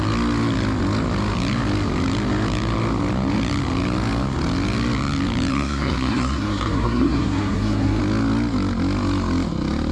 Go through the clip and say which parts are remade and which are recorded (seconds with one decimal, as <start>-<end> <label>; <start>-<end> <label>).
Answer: 0.0-5.5 recorded; 5.5-8.0 remade; 8.0-9.9 recorded